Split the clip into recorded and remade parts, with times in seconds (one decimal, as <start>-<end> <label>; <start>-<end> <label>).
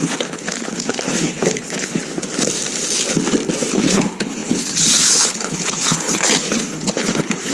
0.0-2.0 remade; 2.0-3.7 recorded; 3.7-7.5 remade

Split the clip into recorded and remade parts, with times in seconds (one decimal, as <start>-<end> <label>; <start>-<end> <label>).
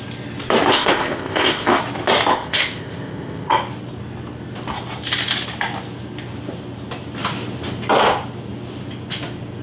0.0-0.7 recorded; 0.7-1.8 remade; 1.8-2.3 recorded; 2.3-3.5 remade; 3.5-9.6 recorded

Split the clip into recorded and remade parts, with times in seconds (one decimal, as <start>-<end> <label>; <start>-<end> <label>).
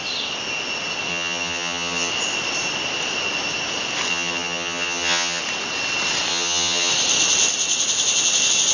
0.0-1.1 recorded; 1.1-2.1 remade; 2.1-4.1 recorded; 4.1-5.4 remade; 5.4-6.3 recorded; 6.3-6.9 remade; 6.9-8.7 recorded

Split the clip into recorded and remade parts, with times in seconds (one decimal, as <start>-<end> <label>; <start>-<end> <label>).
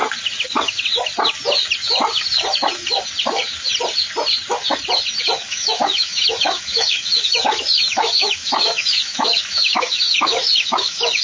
0.0-5.2 recorded; 5.2-11.2 remade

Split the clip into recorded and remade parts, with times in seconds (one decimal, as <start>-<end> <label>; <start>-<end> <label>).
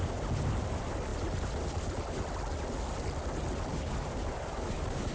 0.0-5.1 recorded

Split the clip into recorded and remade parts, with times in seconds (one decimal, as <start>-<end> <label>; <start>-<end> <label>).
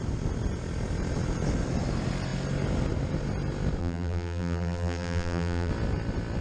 0.0-3.8 recorded; 3.8-5.7 remade; 5.7-6.4 recorded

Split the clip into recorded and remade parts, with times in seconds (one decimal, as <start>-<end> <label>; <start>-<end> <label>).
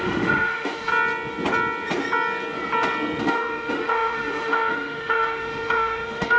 0.0-0.9 remade; 0.9-3.2 recorded; 3.2-6.4 remade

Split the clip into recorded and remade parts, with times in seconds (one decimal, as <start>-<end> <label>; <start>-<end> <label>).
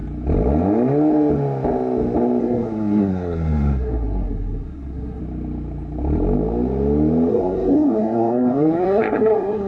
0.0-2.4 recorded; 2.4-5.2 remade; 5.2-7.3 recorded; 7.3-9.7 remade